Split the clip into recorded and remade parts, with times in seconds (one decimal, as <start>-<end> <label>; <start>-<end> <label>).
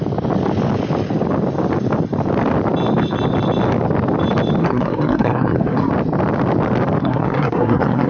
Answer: 0.0-4.6 recorded; 4.6-5.9 remade; 5.9-7.0 recorded; 7.0-8.1 remade